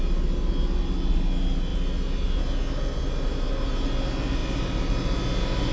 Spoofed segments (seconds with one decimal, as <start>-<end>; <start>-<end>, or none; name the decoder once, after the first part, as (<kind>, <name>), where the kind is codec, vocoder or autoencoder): none

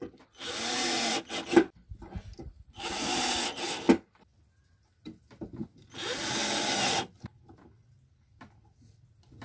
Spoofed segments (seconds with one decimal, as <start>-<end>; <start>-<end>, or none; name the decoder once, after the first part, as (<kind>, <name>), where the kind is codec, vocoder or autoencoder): none